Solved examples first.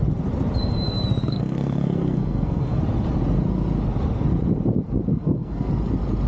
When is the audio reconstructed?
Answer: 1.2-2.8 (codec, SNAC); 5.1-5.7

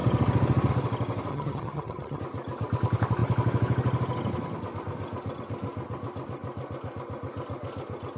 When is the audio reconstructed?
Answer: 1.3-2.2 (vocoder, HiFi-GAN)

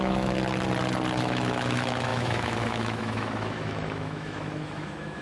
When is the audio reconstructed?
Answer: 0.0-0.4 (autoencoder, DAC-VAE); 1.2-5.2

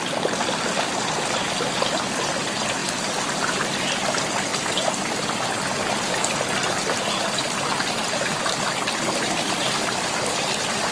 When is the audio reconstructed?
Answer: 0.0-4.5 (vocoder, BigVGAN v2); 8.9-10.9

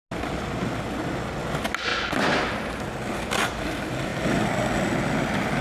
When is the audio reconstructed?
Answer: none

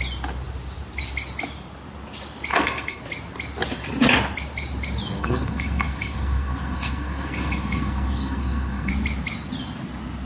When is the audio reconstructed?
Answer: 2.5-3.0 (codec, SNAC); 5.2-8.9